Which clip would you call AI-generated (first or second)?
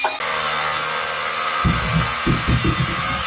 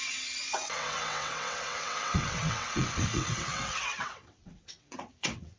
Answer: second